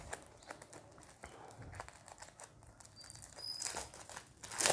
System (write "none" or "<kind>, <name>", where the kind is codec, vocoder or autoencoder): none